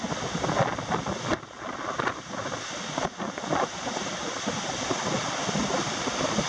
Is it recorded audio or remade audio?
recorded